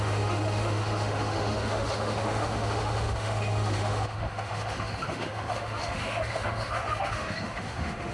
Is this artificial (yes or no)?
yes